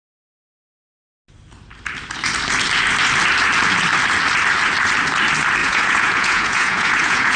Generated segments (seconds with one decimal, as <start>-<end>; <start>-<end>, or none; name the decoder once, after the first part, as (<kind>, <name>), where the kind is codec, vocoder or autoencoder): 5.6-7.4 (vocoder, Vocos)